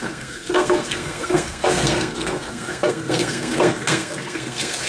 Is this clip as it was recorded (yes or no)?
no